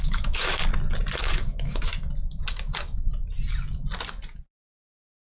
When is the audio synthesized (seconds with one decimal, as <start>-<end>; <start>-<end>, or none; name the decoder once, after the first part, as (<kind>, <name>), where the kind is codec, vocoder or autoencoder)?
0.0-0.6 (autoencoder, DAC-VAE); 1.2-1.9